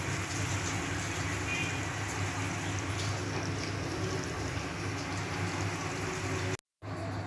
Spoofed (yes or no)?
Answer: no